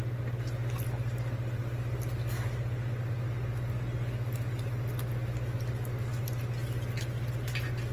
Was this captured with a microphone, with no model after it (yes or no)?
yes